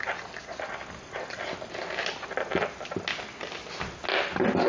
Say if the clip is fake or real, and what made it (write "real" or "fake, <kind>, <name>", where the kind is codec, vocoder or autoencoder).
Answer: real